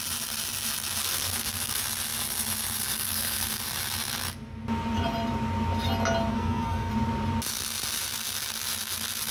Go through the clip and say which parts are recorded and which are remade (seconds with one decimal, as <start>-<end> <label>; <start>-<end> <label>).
0.0-1.0 recorded; 1.0-1.8 remade; 1.8-2.8 recorded; 2.8-3.6 remade; 3.6-6.3 recorded; 6.3-6.9 remade; 6.9-9.3 recorded